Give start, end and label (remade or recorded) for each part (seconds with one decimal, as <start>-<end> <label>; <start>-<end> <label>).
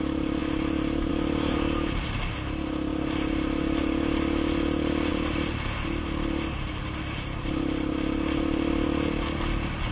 0.0-9.9 recorded